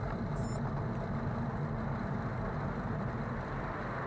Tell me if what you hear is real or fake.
real